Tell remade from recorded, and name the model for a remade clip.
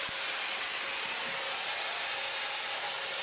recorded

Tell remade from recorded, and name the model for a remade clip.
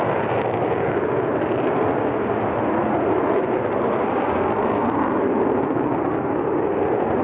recorded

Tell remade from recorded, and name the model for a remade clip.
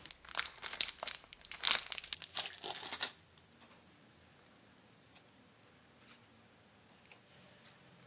recorded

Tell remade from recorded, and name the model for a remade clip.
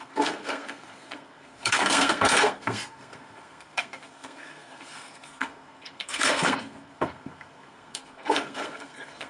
remade, codec, SNAC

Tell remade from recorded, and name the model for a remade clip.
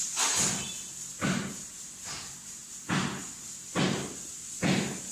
recorded